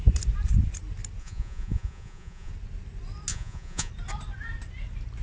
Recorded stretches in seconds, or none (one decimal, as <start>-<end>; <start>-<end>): 0.0-1.2; 2.5-3.3; 3.9-5.2